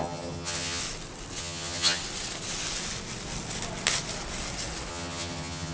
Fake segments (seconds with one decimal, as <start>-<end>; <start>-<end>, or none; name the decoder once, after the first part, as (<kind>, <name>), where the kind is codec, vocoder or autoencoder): 0.0-0.8 (vocoder, HiFi-GAN); 1.4-2.0; 4.9-5.7